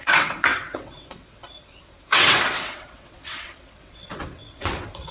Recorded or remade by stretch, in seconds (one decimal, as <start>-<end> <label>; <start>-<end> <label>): 0.0-5.1 remade